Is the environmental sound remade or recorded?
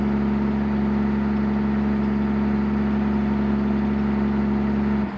recorded